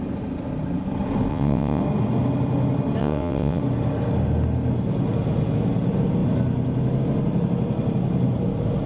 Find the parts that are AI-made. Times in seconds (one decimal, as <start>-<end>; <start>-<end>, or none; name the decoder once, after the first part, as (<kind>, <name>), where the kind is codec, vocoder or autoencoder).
1.3-1.8 (vocoder, WaveNeXt); 3.0-3.6